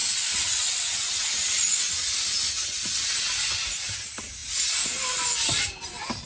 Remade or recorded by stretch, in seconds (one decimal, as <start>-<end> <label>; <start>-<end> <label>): 0.0-1.3 remade; 1.3-6.3 recorded